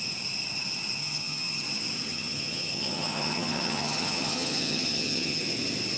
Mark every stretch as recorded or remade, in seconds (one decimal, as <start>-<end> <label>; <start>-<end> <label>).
0.0-1.0 recorded; 1.0-1.6 remade; 1.6-2.1 recorded; 2.1-5.4 remade; 5.4-6.0 recorded

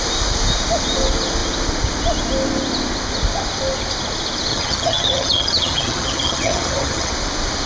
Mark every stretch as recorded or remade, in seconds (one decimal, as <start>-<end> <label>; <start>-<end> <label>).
0.0-4.5 recorded; 4.5-7.1 remade; 7.1-7.7 recorded

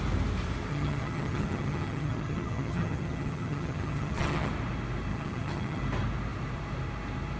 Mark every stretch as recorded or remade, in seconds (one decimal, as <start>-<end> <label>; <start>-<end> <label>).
0.0-0.7 recorded; 0.7-4.5 remade; 4.5-5.1 recorded; 5.1-5.8 remade; 5.8-7.4 recorded

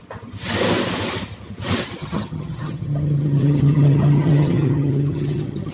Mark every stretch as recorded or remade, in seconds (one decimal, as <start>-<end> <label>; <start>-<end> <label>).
0.0-2.0 recorded; 2.0-5.7 remade

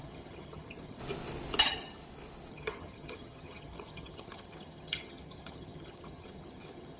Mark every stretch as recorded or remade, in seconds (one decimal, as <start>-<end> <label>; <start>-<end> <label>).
0.0-1.0 remade; 1.0-1.6 recorded; 1.6-2.0 remade; 2.0-2.5 recorded; 2.5-7.0 remade

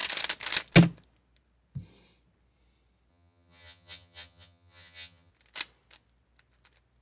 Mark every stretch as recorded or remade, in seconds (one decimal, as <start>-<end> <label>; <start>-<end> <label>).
0.0-3.1 recorded; 3.1-5.3 remade; 5.3-7.0 recorded

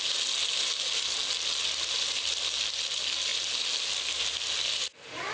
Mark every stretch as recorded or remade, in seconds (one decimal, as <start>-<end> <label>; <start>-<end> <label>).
0.0-5.3 recorded